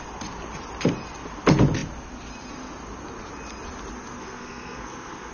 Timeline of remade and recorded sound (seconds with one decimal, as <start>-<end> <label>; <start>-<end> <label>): 0.0-4.2 recorded; 4.2-5.3 remade